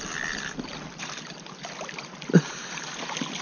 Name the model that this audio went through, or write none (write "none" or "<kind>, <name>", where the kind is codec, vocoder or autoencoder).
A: none